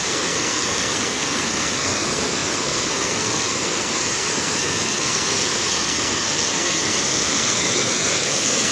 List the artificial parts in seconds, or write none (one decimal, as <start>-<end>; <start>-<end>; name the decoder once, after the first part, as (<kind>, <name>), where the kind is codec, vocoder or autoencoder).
0.0-8.7 (codec, SNAC)